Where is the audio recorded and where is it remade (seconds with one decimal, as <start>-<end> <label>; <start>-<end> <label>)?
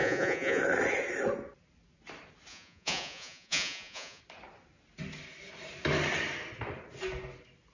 0.0-0.6 remade; 0.6-2.5 recorded; 2.5-4.2 remade; 4.2-7.7 recorded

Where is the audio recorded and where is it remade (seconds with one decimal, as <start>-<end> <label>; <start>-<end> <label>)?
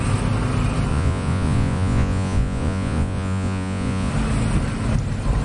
0.0-0.9 recorded; 0.9-4.1 remade; 4.1-5.4 recorded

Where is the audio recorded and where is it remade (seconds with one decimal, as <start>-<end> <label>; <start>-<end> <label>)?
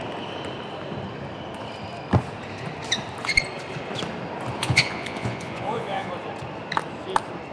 0.0-4.6 recorded; 4.6-6.1 remade; 6.1-7.5 recorded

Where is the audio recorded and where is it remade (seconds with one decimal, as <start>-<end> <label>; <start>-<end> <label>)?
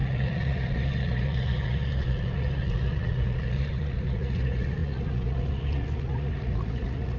0.0-7.2 remade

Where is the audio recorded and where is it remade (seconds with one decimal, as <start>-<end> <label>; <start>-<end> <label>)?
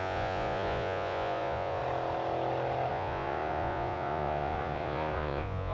0.0-1.8 remade; 1.8-2.9 recorded; 2.9-5.7 remade